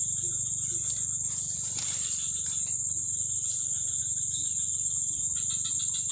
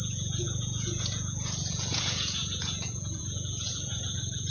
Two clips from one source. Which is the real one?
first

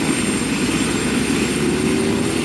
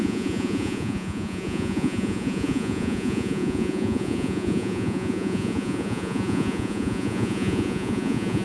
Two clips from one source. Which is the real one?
first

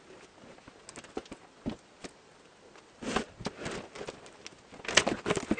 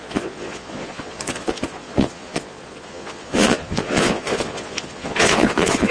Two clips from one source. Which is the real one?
first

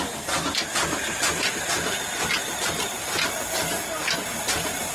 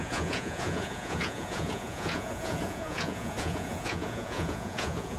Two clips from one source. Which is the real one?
first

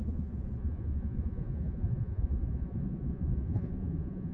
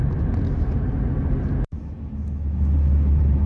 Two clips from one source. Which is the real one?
second